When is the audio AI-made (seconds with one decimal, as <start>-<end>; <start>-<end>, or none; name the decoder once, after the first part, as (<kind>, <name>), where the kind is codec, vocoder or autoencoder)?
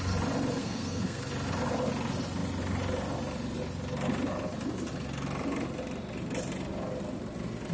0.6-1.2 (codec, SNAC)